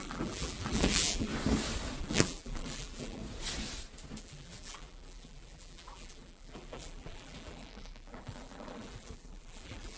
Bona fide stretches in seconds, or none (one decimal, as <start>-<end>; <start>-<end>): 1.3-2.0; 3.2-4.2